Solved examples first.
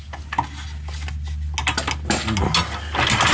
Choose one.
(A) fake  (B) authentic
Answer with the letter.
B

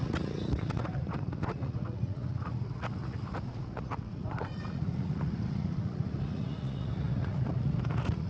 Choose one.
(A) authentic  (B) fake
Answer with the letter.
B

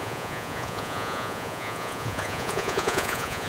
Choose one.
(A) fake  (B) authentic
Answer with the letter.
A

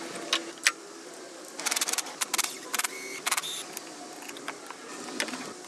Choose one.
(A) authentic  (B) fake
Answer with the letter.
A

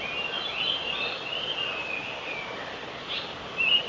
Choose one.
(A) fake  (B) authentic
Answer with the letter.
B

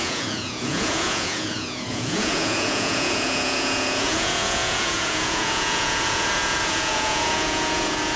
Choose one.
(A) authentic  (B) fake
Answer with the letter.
B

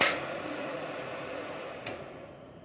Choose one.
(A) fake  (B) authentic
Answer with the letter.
A